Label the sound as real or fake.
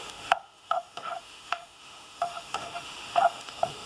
fake